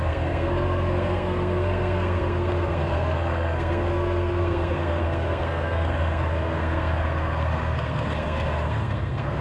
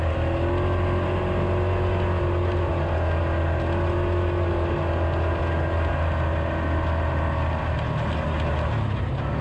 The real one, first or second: second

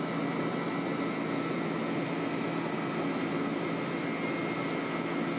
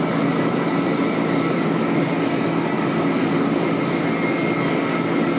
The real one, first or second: first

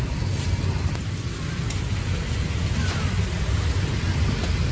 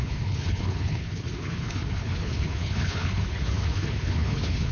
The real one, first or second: first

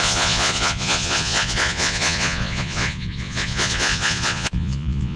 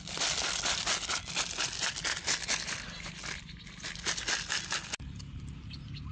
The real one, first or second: second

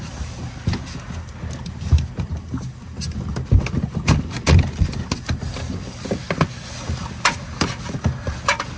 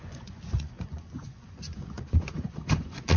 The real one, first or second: first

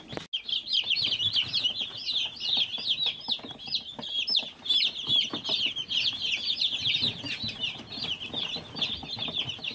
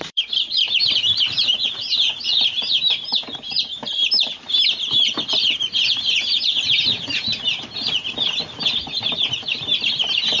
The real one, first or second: first